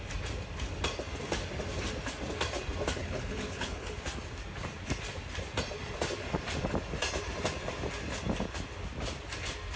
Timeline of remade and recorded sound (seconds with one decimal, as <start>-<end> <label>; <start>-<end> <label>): 0.0-3.0 recorded; 3.0-4.0 remade; 4.0-9.8 recorded